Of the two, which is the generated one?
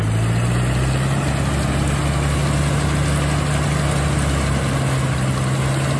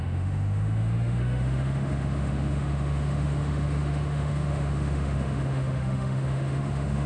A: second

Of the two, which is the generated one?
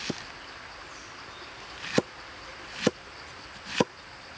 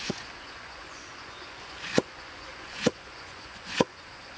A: second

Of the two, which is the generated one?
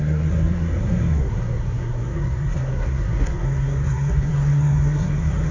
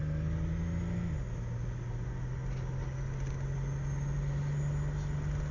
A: first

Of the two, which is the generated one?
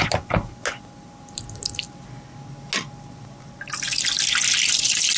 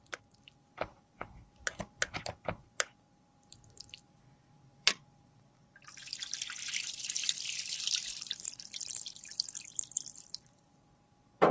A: second